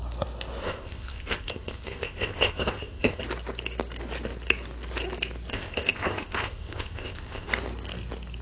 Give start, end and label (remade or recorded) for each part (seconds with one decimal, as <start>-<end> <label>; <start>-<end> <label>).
0.0-0.6 recorded; 0.6-3.2 remade; 3.2-5.5 recorded; 5.5-7.5 remade; 7.5-8.4 recorded